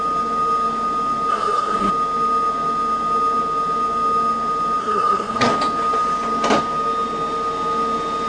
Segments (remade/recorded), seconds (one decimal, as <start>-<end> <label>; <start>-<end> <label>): 0.0-1.3 recorded; 1.3-1.9 remade; 1.9-4.8 recorded; 4.8-5.5 remade; 5.5-8.3 recorded